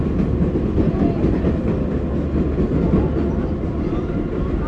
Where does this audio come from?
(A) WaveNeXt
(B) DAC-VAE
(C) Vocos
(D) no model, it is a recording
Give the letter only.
D